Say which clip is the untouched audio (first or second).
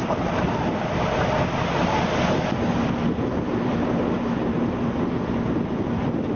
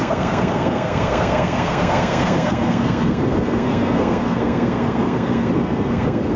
first